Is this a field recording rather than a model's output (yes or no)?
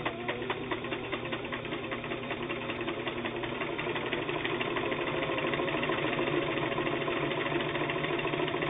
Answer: no